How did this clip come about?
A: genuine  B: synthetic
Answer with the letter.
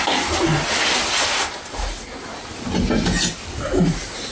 A